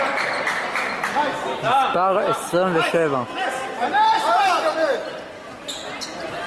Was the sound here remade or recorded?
recorded